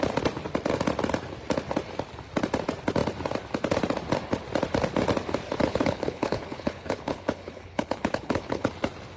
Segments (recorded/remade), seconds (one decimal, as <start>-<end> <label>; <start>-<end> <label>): 0.0-5.6 recorded; 5.6-8.7 remade; 8.7-9.2 recorded